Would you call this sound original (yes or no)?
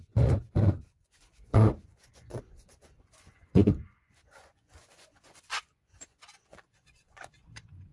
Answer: no